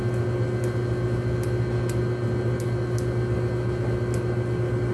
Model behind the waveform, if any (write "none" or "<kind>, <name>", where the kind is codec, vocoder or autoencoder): none